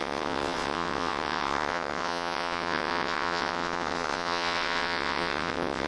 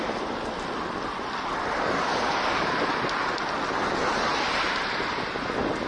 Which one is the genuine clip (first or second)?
second